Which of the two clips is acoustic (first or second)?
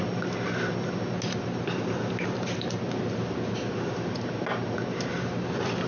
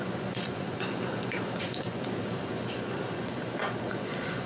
first